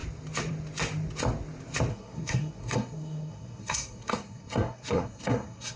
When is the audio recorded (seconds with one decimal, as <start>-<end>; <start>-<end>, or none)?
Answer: 0.0-1.9